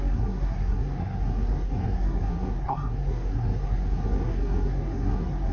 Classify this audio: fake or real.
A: fake